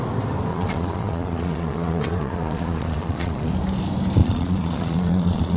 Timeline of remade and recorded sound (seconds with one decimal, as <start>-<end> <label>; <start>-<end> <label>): 0.0-0.5 recorded; 0.5-3.5 remade; 3.5-4.2 recorded; 4.2-5.6 remade